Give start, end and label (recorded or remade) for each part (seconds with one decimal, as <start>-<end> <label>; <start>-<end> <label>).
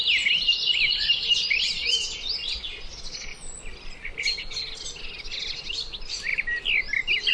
0.0-7.3 recorded